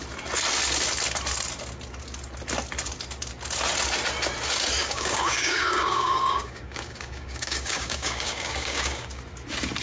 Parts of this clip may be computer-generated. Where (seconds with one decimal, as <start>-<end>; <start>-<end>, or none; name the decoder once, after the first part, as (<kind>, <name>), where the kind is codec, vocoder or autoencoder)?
4.8-9.2 (codec, DAC)

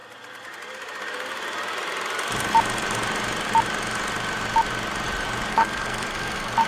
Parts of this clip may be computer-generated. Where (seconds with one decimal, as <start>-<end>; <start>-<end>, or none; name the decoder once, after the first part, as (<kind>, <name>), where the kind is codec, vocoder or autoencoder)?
5.5-6.7 (codec, SNAC)

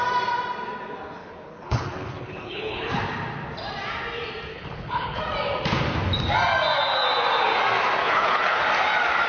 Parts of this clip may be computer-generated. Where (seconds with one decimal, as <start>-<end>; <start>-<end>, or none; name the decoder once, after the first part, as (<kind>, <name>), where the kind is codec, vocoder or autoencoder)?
1.2-2.9 (codec, HILCodec); 4.5-5.2; 8.0-8.6

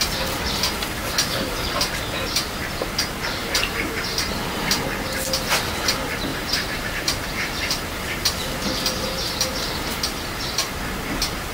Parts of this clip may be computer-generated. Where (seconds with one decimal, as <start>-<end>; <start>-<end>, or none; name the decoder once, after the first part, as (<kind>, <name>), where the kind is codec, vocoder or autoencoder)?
3.4-4.7 (vocoder, BigVGAN v2); 6.3-8.5

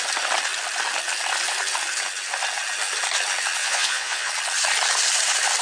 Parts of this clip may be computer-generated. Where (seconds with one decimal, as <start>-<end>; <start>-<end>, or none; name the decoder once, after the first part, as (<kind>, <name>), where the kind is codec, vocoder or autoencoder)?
3.6-4.3 (vocoder, Vocos)